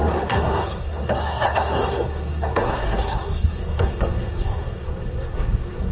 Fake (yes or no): yes